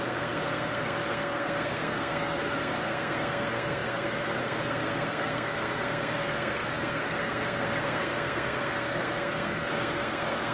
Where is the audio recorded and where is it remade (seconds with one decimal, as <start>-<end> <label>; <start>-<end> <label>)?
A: 0.0-10.5 remade